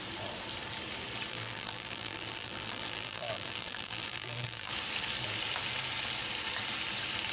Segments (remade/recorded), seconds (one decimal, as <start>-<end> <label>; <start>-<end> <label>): 0.0-1.3 recorded; 1.3-4.7 remade; 4.7-7.3 recorded